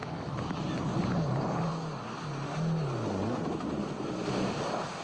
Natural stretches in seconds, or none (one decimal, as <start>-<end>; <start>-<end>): 0.6-5.0